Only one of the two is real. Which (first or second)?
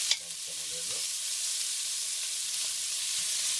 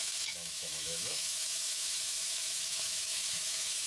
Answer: first